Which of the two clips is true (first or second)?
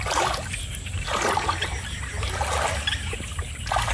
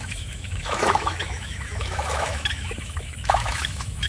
first